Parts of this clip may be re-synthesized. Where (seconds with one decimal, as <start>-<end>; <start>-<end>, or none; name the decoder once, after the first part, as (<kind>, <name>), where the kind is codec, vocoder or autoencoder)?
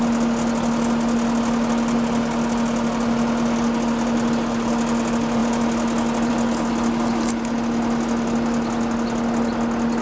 none